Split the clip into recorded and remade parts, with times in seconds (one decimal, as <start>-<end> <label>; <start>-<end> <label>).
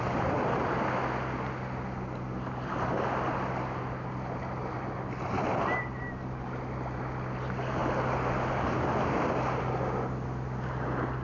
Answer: 0.0-11.2 recorded